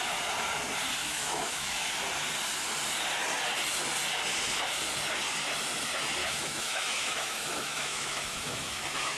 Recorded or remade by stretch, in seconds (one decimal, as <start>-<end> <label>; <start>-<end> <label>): 0.0-1.0 recorded; 1.0-1.9 remade; 1.9-6.2 recorded; 6.2-9.2 remade

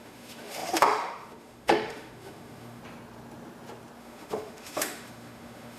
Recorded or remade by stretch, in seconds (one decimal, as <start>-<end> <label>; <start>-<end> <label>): 0.0-2.8 remade; 2.8-4.0 recorded; 4.0-5.8 remade